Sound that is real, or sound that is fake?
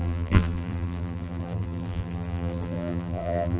fake